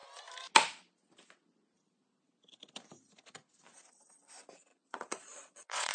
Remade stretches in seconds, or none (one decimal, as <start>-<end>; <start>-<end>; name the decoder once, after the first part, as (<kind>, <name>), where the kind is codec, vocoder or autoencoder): 4.7-5.9 (vocoder, Vocos)